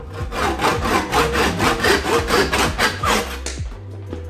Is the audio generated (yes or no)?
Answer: no